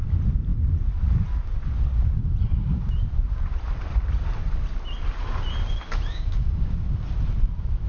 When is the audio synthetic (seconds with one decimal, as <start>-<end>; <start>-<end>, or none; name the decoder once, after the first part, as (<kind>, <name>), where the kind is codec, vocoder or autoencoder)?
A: 6.1-6.7 (codec, DAC)

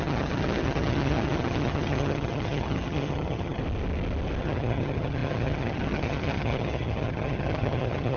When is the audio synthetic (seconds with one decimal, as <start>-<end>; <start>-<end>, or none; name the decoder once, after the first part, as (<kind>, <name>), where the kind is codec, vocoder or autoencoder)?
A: 0.0-3.6 (vocoder, HiFi-GAN); 4.4-8.2